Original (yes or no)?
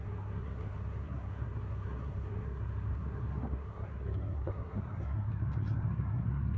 no